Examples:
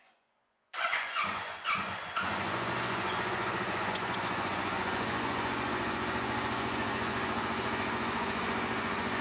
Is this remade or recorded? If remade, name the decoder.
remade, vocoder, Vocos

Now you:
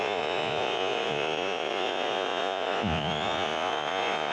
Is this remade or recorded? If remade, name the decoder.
remade, vocoder, Vocos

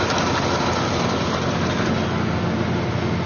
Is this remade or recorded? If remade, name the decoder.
recorded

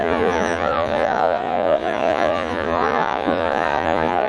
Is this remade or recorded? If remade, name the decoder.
remade, vocoder, Vocos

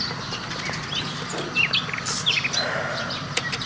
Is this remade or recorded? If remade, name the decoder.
recorded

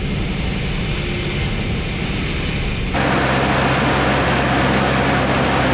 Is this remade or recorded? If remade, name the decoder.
recorded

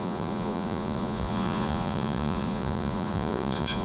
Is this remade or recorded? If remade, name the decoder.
remade, vocoder, Vocos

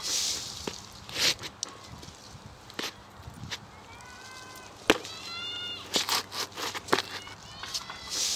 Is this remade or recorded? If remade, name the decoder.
recorded